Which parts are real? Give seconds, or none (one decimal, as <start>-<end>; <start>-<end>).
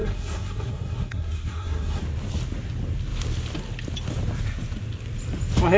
2.0-5.8